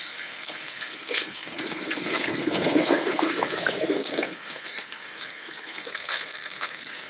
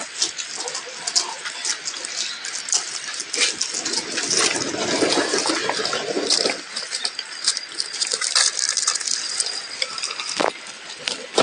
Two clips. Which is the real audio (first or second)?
second